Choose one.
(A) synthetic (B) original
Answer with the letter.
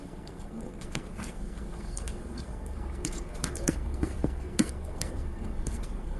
A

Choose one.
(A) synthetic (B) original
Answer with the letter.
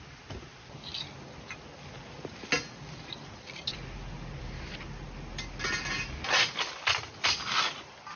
B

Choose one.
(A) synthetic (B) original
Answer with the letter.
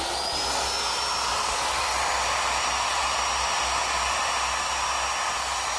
B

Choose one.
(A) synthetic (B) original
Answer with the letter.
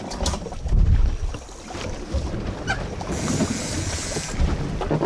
B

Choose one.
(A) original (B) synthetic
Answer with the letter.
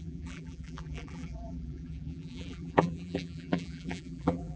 B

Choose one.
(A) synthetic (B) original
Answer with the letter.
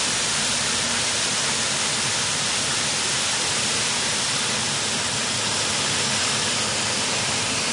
B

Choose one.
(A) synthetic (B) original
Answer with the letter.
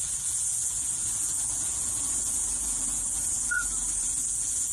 A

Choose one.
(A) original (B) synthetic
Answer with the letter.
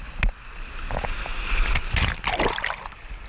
A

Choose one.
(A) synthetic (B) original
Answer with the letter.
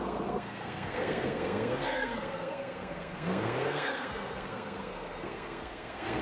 A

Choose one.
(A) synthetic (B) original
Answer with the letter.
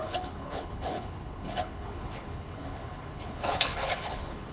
A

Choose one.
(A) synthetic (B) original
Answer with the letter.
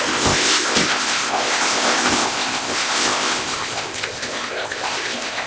A